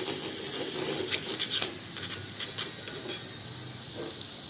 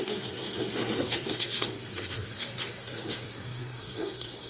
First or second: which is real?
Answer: first